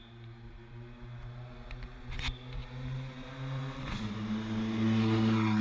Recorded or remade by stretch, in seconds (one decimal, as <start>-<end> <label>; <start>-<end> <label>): 0.0-5.6 recorded